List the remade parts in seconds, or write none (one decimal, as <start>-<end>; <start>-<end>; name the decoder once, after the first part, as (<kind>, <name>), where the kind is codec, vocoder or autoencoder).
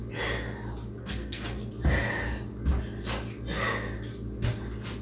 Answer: 1.0-1.7 (codec, SNAC)